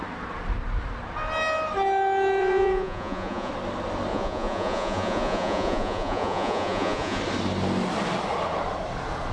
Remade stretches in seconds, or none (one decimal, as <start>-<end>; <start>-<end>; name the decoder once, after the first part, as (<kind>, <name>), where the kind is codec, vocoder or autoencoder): 2.4-3.5 (vocoder, Vocos); 4.1-7.2